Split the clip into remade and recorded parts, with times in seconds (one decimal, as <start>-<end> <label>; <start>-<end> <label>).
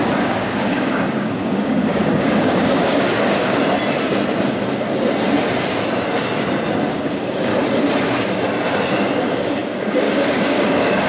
0.0-3.6 remade; 3.6-6.9 recorded; 6.9-7.5 remade; 7.5-8.9 recorded; 8.9-11.1 remade